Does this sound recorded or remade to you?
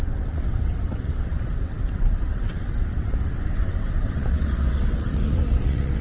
remade